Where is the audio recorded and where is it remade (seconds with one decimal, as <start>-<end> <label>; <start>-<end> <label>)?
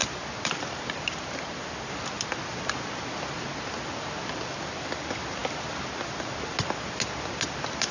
0.0-7.9 recorded